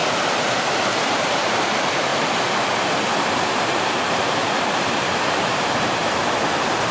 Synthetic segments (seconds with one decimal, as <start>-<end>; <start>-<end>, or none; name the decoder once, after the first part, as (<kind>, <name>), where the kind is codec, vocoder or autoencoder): 1.1-2.1 (vocoder, BigVGAN v2); 3.3-6.0